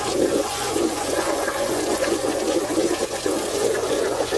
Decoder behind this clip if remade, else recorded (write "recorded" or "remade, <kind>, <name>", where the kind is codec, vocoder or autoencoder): remade, vocoder, Vocos